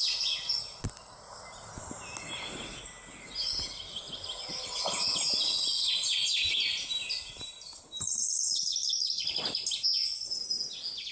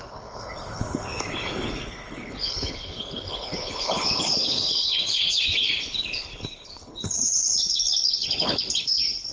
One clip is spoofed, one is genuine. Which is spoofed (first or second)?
second